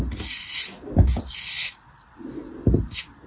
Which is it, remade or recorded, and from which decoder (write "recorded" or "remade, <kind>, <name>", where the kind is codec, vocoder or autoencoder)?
recorded